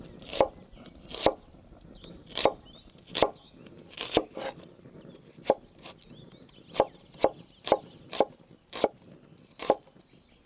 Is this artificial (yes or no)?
no